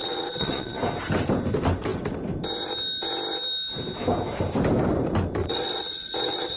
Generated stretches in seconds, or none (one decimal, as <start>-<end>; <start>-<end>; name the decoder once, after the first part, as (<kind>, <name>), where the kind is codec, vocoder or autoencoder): 0.0-0.8 (vocoder, WaveNeXt); 5.4-6.6